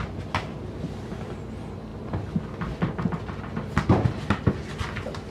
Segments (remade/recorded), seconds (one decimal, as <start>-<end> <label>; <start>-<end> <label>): 0.0-5.3 recorded